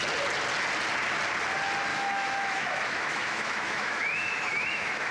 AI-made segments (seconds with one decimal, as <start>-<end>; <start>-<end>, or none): 1.9-5.1